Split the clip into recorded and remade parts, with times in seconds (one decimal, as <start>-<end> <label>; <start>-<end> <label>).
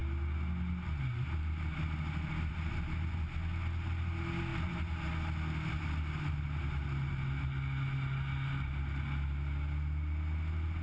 0.0-10.8 recorded